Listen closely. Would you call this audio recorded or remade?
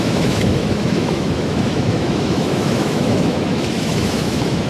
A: remade